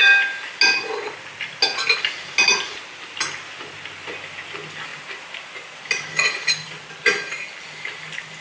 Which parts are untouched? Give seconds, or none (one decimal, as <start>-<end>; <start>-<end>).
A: 0.0-8.4